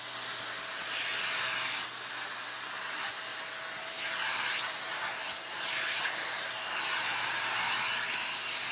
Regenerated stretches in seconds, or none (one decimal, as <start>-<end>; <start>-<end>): none